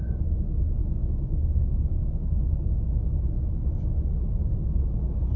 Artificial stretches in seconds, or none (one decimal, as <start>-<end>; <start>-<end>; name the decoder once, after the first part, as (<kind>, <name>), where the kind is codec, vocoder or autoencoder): none

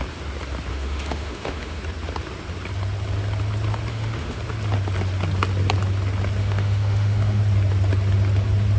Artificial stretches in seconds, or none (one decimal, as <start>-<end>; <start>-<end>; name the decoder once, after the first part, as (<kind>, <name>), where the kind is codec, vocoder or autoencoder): 0.7-1.8 (autoencoder, DAC-VAE); 3.9-4.4; 6.4-7.4